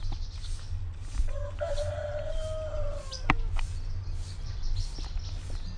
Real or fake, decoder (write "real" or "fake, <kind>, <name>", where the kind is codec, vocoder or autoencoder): real